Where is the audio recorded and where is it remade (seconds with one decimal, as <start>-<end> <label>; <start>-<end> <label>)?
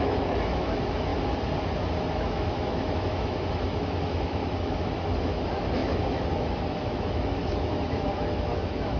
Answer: 0.0-1.1 remade; 1.1-2.1 recorded; 2.1-9.0 remade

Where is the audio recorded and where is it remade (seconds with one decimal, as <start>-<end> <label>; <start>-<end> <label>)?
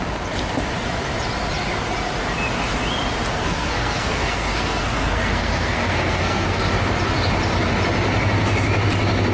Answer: 0.0-3.3 recorded; 3.3-6.6 remade; 6.6-9.3 recorded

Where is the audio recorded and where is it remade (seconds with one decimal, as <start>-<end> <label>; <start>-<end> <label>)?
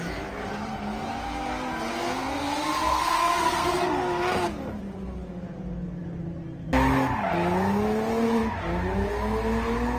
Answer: 0.0-2.9 recorded; 2.9-3.9 remade; 3.9-10.0 recorded